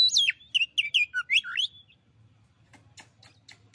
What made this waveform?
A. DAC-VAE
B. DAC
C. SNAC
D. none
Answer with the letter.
D